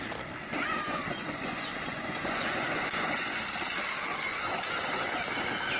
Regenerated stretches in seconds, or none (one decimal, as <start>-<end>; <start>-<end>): 0.4-3.4; 4.1-5.2